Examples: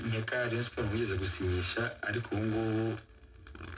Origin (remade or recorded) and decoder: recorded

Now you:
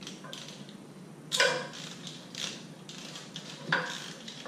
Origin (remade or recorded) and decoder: recorded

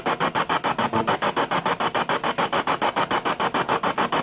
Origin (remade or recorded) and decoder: recorded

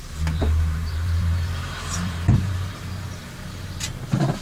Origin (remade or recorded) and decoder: remade, vocoder, BigVGAN v2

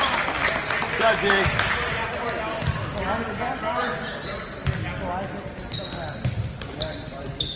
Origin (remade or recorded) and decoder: recorded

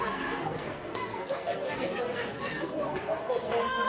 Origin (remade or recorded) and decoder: remade, codec, SNAC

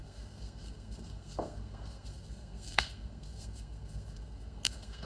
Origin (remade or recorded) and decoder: remade, codec, SNAC